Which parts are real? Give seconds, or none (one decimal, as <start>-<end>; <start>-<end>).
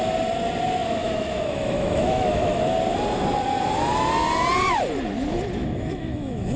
0.0-0.8; 2.6-5.6